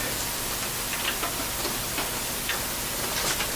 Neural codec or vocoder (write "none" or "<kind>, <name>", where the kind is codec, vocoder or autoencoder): none